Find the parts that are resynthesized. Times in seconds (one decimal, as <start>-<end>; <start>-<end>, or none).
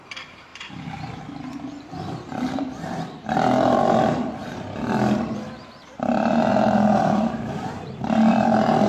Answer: 0.0-0.5; 1.0-4.4; 6.4-8.9